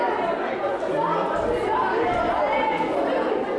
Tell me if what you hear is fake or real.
real